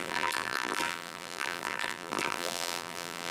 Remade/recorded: remade